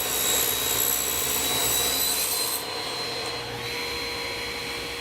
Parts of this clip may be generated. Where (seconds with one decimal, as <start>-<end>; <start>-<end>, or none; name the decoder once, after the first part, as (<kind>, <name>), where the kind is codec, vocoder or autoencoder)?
none